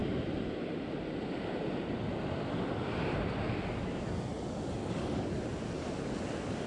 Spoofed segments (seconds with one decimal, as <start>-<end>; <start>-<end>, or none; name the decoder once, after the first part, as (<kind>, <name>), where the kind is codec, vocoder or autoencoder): 4.8-5.3 (codec, DAC)